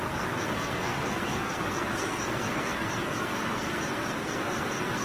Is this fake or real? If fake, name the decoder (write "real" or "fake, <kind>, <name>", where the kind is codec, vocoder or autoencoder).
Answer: fake, codec, SNAC